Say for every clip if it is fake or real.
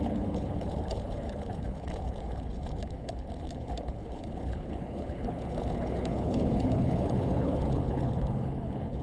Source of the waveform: fake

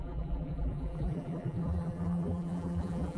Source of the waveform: fake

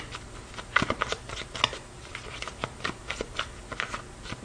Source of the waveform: real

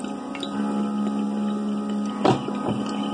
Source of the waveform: real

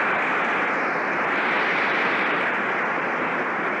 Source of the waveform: real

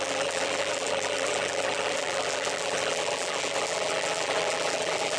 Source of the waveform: fake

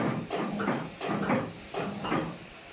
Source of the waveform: real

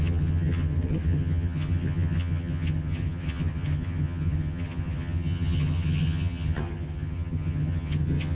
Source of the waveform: fake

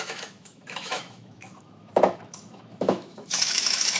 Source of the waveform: fake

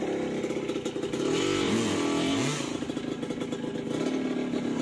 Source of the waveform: real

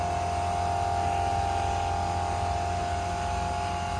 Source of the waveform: real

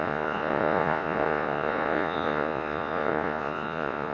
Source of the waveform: fake